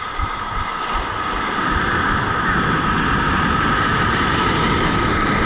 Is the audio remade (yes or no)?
no